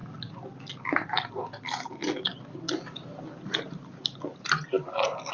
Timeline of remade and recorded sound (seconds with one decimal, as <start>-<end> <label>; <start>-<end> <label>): 0.0-5.3 recorded